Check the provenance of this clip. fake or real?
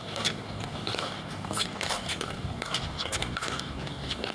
fake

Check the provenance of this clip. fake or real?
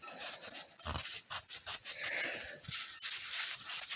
real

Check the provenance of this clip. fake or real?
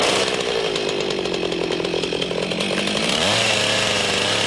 real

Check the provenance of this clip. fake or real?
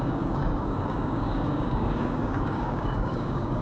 fake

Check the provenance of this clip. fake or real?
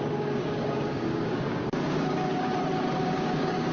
fake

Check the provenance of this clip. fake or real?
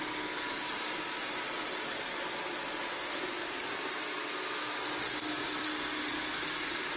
real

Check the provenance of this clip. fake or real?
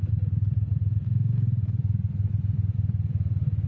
real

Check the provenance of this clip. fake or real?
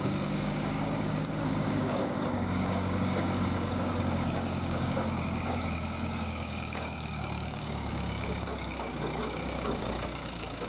fake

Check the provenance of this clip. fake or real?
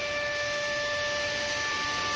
real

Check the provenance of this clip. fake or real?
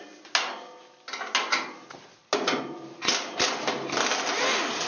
real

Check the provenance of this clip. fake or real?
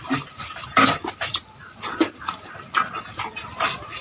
real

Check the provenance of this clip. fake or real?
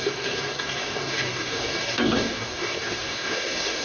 fake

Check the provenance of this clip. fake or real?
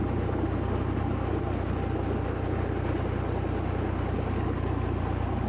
real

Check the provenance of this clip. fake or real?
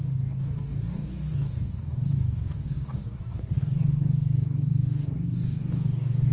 fake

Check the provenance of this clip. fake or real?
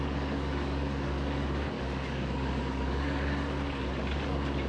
fake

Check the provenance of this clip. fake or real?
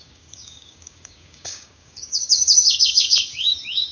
fake